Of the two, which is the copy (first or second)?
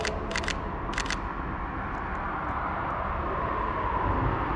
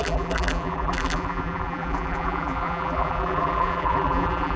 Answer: second